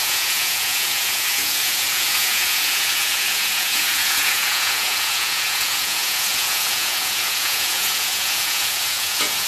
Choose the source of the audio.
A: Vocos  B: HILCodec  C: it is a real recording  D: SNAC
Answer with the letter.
A